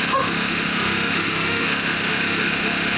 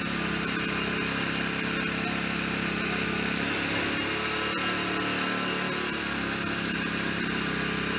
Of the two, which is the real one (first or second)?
second